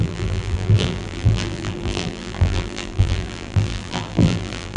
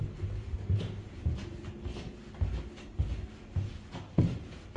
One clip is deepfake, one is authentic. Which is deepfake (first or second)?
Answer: first